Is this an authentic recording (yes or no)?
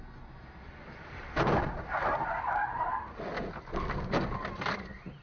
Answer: yes